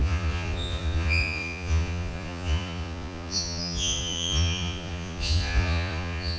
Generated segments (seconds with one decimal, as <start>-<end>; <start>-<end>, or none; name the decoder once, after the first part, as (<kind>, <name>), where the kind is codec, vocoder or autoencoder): 0.0-6.4 (vocoder, Vocos)